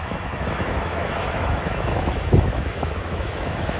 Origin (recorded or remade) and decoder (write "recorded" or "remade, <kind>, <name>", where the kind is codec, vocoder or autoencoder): remade, autoencoder, DAC-VAE